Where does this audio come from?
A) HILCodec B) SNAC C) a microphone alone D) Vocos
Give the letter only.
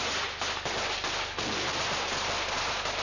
C